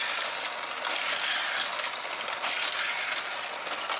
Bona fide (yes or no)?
yes